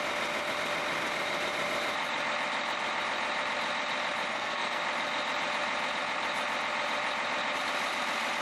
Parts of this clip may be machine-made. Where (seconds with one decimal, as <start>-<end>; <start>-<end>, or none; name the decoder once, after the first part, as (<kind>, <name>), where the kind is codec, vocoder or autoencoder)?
4.3-4.8 (codec, SNAC)